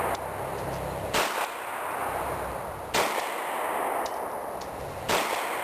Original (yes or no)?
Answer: yes